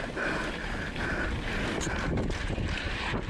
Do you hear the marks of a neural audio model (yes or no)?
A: no